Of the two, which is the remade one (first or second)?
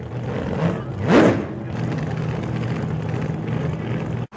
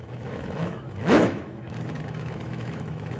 second